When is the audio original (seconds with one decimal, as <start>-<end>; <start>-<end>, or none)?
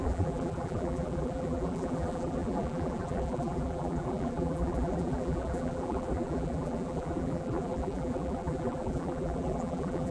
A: none